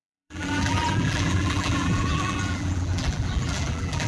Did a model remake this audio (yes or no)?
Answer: yes